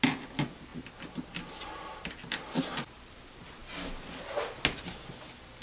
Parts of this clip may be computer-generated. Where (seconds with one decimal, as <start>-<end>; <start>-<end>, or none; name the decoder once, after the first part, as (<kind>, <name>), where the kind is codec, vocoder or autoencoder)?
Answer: none